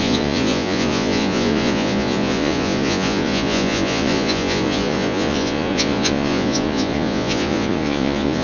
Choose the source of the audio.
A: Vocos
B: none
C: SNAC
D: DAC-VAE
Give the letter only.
A